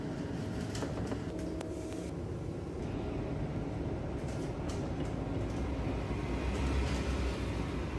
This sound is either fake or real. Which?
real